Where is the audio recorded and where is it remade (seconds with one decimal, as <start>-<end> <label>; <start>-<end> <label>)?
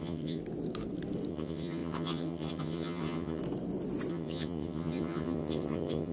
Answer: 0.0-0.4 remade; 0.4-1.3 recorded; 1.3-3.4 remade; 3.4-4.1 recorded; 4.1-6.1 remade